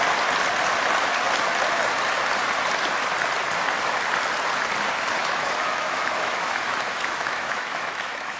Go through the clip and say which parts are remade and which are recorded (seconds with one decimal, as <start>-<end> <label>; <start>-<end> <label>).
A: 0.0-5.2 recorded; 5.2-8.4 remade